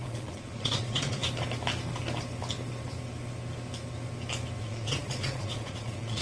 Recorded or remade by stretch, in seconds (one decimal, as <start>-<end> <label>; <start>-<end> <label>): 0.0-1.2 remade; 1.2-4.6 recorded; 4.6-6.2 remade